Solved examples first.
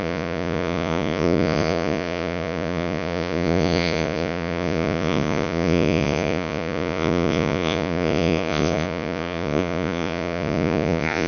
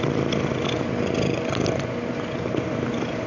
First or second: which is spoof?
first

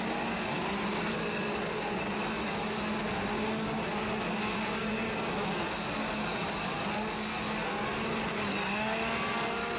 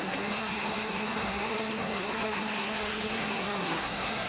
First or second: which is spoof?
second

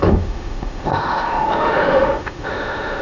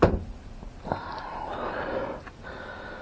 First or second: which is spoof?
first